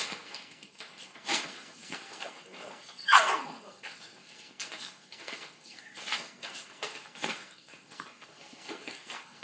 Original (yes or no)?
no